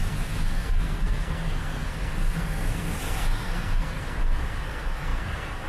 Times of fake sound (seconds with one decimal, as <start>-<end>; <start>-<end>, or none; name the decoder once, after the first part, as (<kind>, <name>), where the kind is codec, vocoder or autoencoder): 0.0-5.7 (codec, SNAC)